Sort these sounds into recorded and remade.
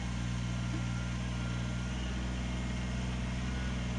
recorded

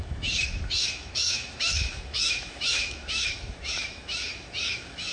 remade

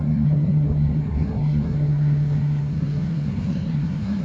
remade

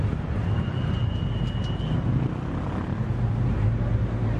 recorded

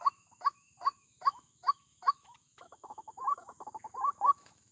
remade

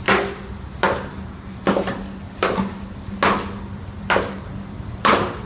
recorded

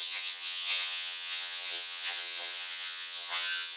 remade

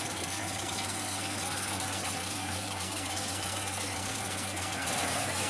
remade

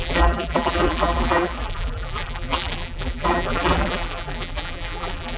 remade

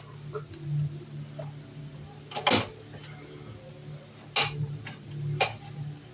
recorded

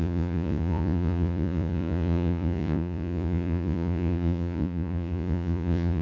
remade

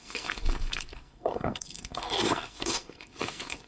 remade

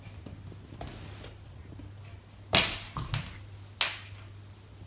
recorded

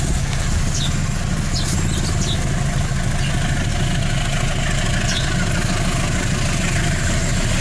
recorded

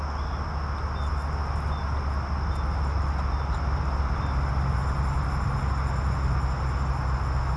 recorded